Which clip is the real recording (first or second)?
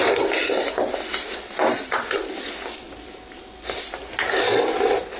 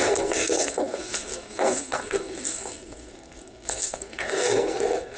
first